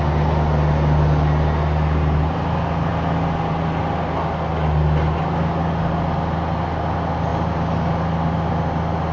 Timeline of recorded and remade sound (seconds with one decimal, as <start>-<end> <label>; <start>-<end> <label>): 0.0-9.1 recorded